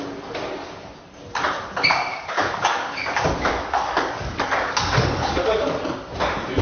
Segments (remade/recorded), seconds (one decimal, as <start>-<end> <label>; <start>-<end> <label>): 0.0-2.1 recorded; 2.1-5.8 remade; 5.8-6.6 recorded